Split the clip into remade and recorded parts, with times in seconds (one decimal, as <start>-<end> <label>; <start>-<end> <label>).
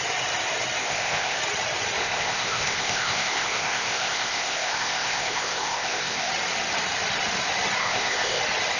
0.0-0.8 recorded; 0.8-1.4 remade; 1.4-2.0 recorded; 2.0-6.3 remade; 6.3-7.8 recorded; 7.8-8.4 remade; 8.4-8.8 recorded